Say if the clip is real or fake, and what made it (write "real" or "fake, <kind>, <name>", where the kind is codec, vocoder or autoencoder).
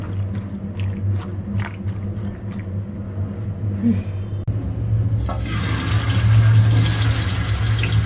real